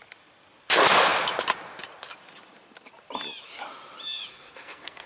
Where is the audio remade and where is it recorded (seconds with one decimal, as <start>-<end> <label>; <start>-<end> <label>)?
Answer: 0.0-4.3 recorded; 4.3-5.1 remade